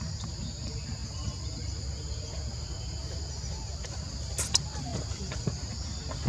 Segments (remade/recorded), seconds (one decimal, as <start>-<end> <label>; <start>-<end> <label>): 0.0-6.3 recorded